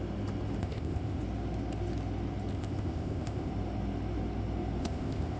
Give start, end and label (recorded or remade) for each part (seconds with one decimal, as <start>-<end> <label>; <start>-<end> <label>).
0.0-0.6 recorded; 0.6-1.2 remade; 1.2-2.5 recorded; 2.5-3.5 remade; 3.5-4.8 recorded; 4.8-5.4 remade